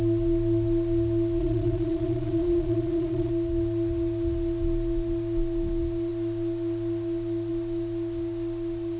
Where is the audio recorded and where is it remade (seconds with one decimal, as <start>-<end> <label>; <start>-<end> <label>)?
0.0-1.4 recorded; 1.4-3.3 remade; 3.3-9.0 recorded